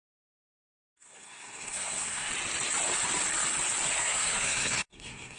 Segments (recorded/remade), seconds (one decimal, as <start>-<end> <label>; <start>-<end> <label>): 0.0-0.5 recorded; 0.5-2.3 remade; 2.3-4.0 recorded; 4.0-5.4 remade